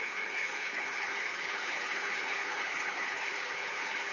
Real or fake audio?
fake